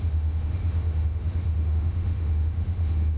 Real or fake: fake